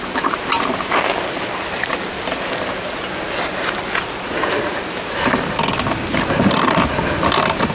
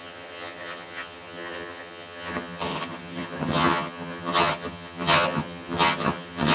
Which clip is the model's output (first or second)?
second